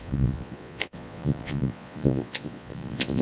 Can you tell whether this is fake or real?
fake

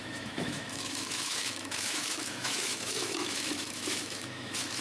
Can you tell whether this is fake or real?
fake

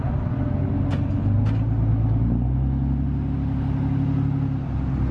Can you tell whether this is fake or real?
real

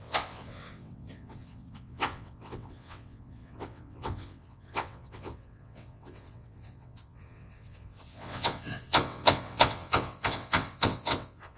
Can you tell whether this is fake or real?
fake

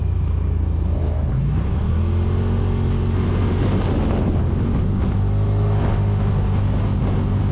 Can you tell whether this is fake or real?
real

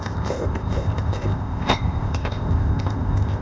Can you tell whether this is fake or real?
fake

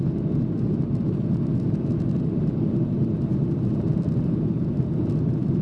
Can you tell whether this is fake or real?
real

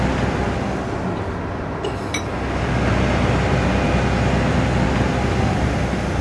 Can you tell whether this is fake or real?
real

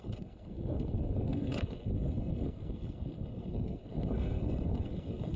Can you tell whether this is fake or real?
fake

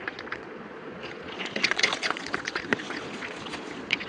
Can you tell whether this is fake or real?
fake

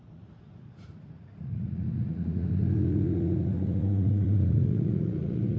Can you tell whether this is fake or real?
fake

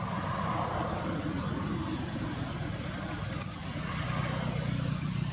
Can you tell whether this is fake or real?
real